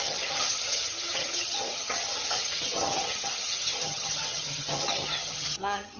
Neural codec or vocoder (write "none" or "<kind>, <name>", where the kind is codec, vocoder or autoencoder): vocoder, HiFi-GAN